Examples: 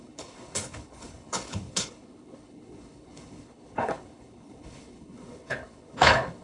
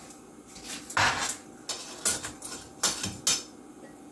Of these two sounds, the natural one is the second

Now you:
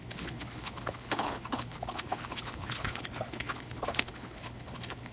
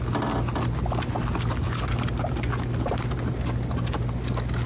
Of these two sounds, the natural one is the second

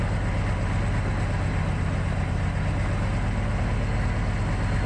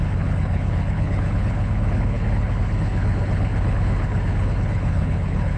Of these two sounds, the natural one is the first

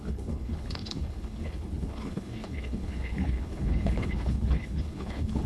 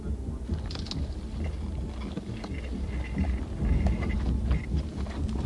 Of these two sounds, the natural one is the second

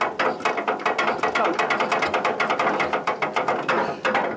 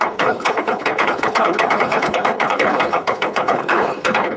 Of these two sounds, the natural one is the first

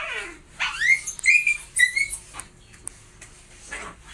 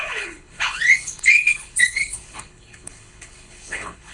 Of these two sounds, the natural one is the first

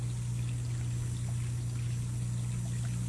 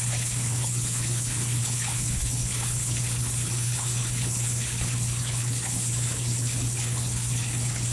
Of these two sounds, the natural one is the first